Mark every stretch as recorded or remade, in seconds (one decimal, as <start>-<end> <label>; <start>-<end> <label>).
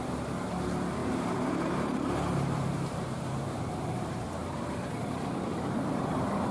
0.0-1.0 recorded; 1.0-4.9 remade; 4.9-5.5 recorded; 5.5-6.5 remade